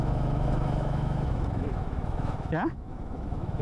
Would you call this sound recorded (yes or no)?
no